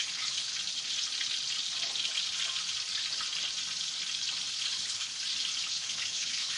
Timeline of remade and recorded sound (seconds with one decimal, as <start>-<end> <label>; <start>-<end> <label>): 0.0-0.5 remade; 0.5-4.5 recorded; 4.5-5.1 remade; 5.1-5.7 recorded; 5.7-6.6 remade